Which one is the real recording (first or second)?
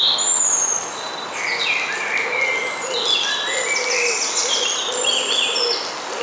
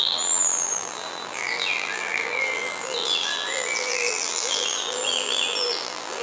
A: first